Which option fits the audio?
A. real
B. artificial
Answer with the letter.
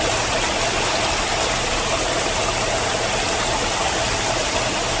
A